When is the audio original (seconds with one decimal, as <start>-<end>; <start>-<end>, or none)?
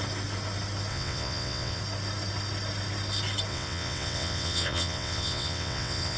0.0-0.9; 1.8-3.5